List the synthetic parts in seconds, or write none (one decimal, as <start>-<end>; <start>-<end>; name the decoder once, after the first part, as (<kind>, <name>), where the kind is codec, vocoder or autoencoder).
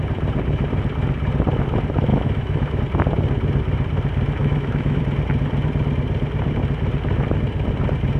2.1-2.8 (autoencoder, DAC-VAE); 4.4-5.0